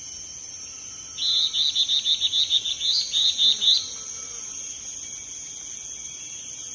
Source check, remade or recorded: recorded